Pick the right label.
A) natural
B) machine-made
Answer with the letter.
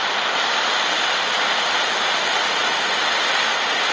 B